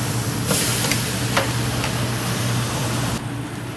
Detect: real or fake real